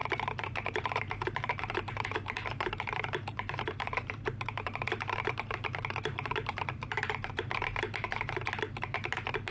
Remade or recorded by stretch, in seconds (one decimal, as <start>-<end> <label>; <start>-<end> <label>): 0.0-9.5 remade